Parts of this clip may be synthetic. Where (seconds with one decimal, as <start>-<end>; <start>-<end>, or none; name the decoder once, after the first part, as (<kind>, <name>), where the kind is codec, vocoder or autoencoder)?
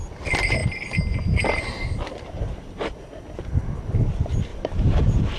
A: 4.5-5.0 (vocoder, BigVGAN v2)